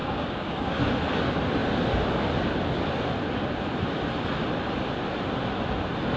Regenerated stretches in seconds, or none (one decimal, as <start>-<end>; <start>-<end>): 0.0-0.8

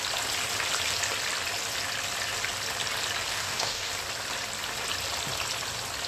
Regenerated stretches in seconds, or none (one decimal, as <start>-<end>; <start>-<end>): 3.3-3.9

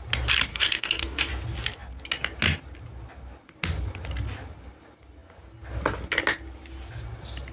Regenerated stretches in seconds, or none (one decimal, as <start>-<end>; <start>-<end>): 0.5-1.3

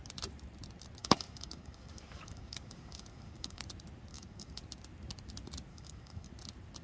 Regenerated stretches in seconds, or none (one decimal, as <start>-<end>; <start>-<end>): 1.0-3.6; 4.1-4.6; 5.7-6.3

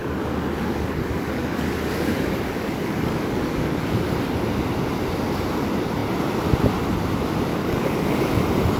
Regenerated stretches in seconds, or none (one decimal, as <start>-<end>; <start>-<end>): 0.0-3.8; 7.5-8.4

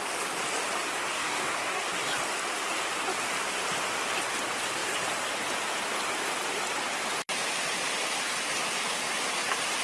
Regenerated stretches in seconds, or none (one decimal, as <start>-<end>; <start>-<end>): 1.1-1.8

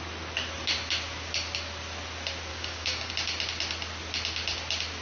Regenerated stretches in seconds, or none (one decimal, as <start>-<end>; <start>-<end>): 2.5-3.1